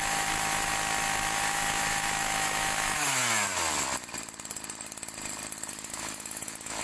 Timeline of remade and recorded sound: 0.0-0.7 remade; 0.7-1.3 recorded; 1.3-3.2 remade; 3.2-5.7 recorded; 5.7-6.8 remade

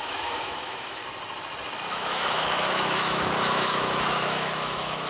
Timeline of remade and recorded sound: 0.0-1.0 remade; 1.0-1.9 recorded; 1.9-5.1 remade